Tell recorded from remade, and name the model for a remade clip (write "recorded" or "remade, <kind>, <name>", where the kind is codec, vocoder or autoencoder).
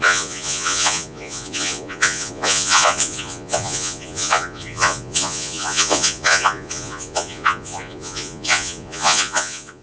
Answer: remade, vocoder, Vocos